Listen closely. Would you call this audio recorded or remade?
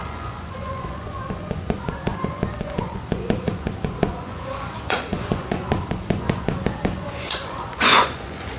remade